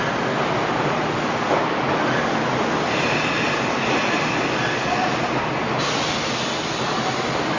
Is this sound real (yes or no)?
yes